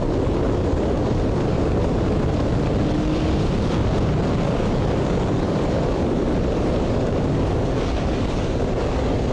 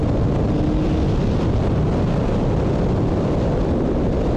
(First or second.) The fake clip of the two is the first